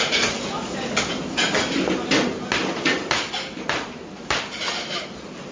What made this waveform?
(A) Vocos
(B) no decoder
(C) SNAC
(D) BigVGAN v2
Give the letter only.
B